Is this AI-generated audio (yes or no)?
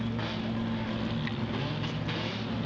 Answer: no